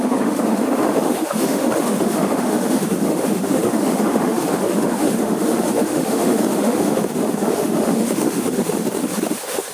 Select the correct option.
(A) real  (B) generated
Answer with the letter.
B